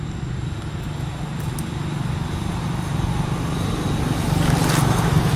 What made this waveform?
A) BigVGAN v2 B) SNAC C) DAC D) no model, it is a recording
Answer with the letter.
D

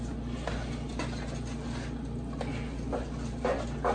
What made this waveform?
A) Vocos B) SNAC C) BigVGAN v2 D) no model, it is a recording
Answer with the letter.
D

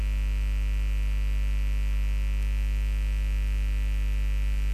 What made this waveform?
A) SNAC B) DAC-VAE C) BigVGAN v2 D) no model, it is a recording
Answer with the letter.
D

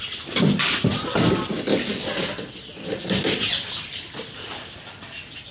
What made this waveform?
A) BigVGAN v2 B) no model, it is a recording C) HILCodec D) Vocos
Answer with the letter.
B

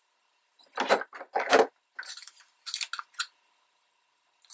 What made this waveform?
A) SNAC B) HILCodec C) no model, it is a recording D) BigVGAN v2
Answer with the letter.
C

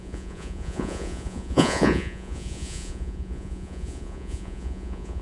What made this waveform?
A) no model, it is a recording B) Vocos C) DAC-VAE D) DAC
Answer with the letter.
B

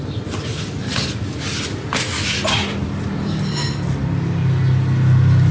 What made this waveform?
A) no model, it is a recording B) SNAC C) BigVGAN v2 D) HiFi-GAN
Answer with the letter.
A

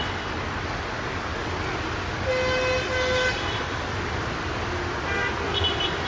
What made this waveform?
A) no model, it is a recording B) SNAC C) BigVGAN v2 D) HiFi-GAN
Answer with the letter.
A